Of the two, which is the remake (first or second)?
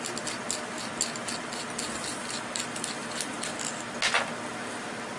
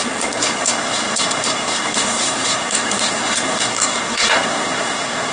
second